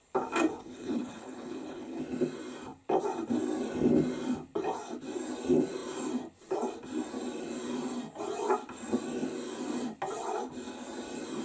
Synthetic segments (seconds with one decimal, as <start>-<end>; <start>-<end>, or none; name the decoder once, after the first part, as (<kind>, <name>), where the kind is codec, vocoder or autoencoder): 0.6-2.0 (codec, HILCodec)